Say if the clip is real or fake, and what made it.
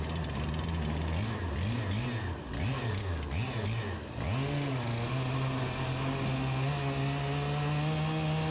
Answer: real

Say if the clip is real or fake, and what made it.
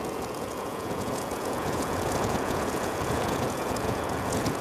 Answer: fake, vocoder, Vocos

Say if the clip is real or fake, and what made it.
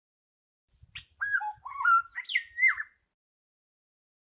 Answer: real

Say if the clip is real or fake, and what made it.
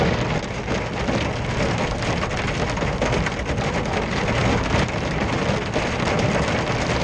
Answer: real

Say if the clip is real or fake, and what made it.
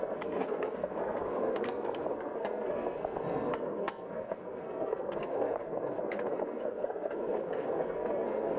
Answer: fake, codec, SNAC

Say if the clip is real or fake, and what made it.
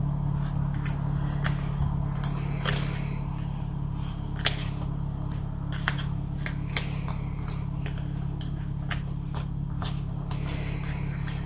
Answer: real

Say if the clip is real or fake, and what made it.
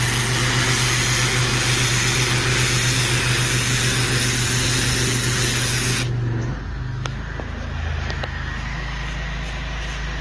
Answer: real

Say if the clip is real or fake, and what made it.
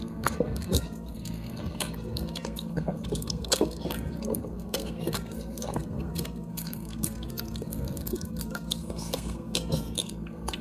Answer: fake, codec, SNAC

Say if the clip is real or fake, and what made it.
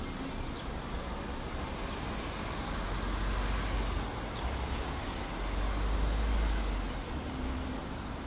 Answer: real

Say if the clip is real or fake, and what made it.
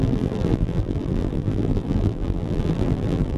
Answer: fake, vocoder, BigVGAN v2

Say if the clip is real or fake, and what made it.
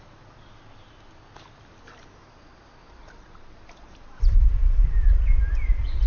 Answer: real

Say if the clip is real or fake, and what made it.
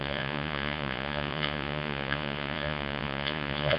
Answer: fake, vocoder, Vocos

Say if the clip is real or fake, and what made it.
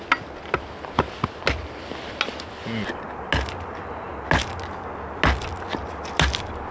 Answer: real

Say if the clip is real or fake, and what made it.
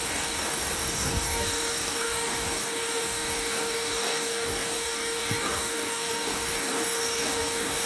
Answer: fake, codec, DAC